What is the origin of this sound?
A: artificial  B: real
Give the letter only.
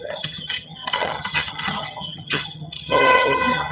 A